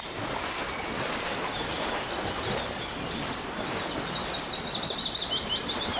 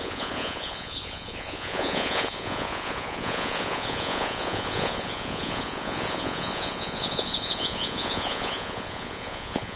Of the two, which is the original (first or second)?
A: first